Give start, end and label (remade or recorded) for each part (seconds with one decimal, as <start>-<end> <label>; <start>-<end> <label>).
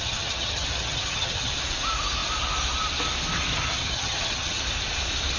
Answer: 0.0-1.5 remade; 1.5-3.5 recorded; 3.5-4.6 remade; 4.6-5.4 recorded